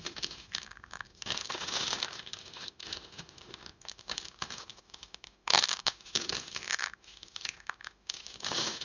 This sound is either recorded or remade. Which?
remade